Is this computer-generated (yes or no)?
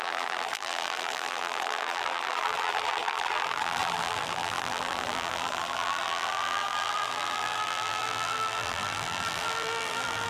yes